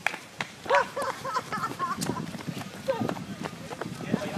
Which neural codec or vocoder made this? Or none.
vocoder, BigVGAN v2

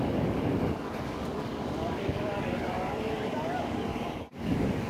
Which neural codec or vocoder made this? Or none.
codec, DAC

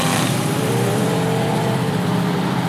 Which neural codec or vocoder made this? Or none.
vocoder, BigVGAN v2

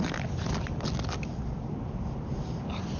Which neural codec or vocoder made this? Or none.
none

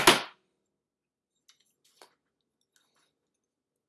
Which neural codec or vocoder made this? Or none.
none